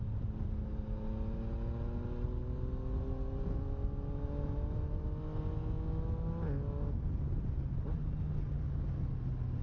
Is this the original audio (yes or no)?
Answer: yes